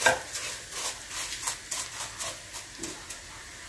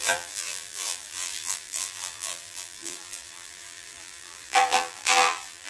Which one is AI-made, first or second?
second